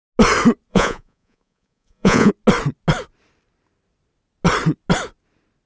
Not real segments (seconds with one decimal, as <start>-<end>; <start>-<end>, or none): 0.7-2.3